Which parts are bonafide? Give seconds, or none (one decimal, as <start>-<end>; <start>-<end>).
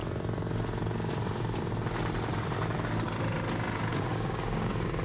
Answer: 0.0-3.9